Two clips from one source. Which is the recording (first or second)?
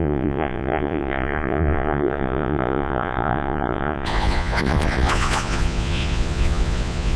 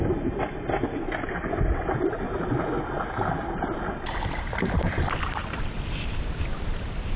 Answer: second